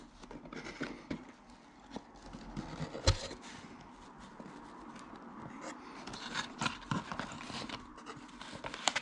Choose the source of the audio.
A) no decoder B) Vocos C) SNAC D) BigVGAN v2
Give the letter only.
A